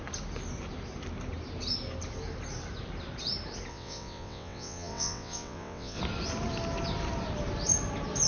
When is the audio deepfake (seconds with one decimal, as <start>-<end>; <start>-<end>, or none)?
3.7-6.0